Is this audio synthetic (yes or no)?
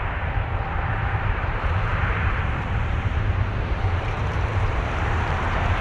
yes